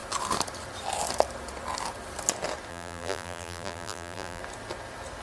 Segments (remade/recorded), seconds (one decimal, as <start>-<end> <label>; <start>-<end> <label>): 0.0-2.7 recorded; 2.7-4.4 remade; 4.4-5.2 recorded